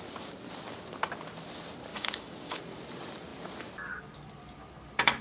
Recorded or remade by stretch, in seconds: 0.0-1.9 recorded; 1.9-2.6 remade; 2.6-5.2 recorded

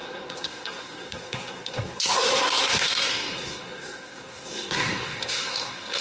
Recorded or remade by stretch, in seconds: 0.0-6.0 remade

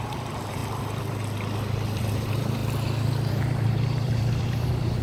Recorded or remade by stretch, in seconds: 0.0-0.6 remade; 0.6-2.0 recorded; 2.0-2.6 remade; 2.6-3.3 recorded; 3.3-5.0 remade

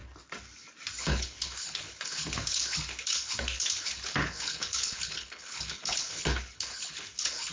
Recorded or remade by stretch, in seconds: 0.0-1.0 recorded; 1.0-7.5 remade

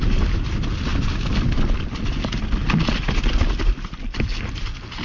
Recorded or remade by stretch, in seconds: 0.0-5.0 recorded